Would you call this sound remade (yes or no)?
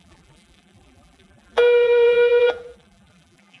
yes